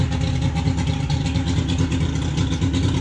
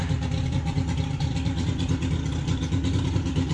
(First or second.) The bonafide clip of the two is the first